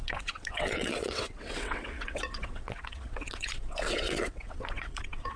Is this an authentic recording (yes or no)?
no